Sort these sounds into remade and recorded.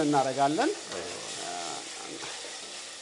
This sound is recorded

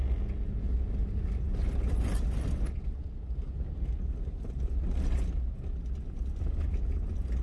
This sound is recorded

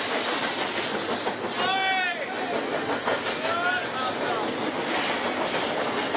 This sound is recorded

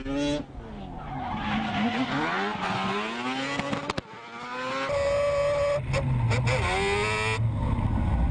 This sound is recorded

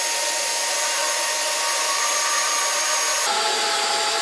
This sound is recorded